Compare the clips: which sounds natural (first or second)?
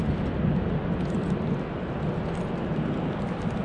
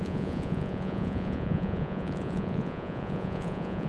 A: first